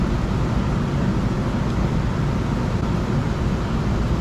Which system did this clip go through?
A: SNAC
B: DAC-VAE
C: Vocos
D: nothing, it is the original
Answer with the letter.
D